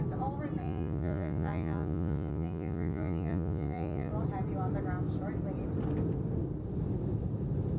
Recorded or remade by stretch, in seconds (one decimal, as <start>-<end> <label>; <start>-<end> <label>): 0.0-0.6 recorded; 0.6-4.1 remade; 4.1-7.8 recorded